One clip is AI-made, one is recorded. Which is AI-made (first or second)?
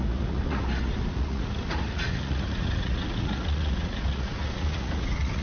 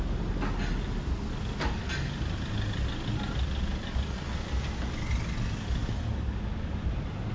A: first